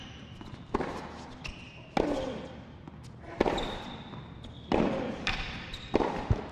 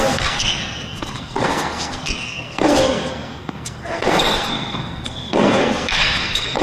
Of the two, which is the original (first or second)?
first